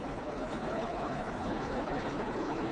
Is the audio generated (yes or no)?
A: yes